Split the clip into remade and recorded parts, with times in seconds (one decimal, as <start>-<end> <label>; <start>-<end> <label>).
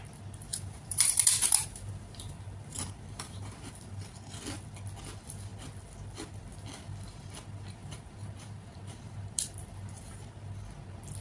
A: 0.0-0.5 recorded; 0.5-3.7 remade; 3.7-7.8 recorded; 7.8-10.0 remade; 10.0-11.2 recorded